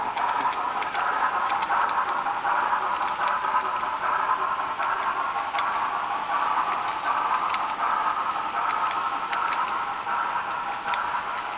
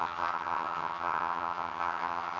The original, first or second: first